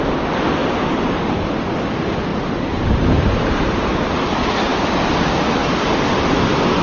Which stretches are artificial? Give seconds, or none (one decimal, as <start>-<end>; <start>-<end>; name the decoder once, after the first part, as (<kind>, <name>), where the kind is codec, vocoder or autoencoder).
2.3-4.1 (vocoder, BigVGAN v2)